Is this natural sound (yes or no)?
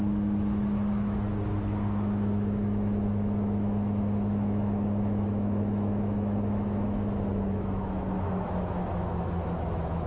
no